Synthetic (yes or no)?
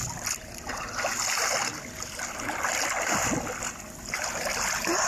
no